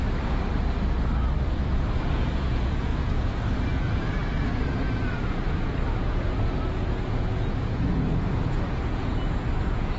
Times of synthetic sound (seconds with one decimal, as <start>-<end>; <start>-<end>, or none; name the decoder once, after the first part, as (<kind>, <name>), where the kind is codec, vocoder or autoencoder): 1.5-10.0 (vocoder, Vocos)